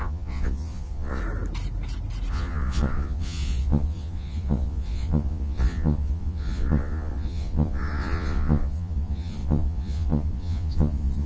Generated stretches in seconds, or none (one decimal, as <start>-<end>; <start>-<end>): 0.0-1.2; 2.3-11.3